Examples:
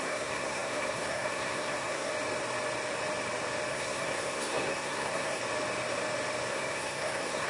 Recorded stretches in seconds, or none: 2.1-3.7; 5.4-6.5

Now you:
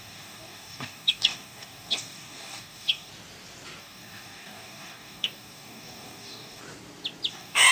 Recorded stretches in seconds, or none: 3.1-3.8; 6.6-7.3

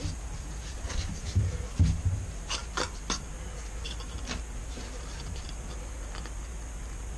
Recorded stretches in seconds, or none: 0.0-7.2

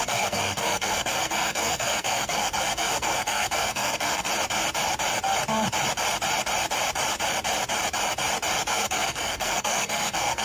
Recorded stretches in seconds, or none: 4.3-8.7

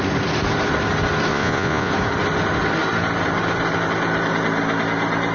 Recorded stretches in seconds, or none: 0.0-1.3; 1.9-5.3